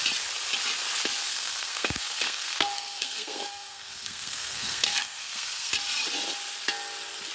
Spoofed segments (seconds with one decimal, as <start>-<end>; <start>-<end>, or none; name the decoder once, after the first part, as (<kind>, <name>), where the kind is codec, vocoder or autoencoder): 1.3-5.7 (codec, SNAC)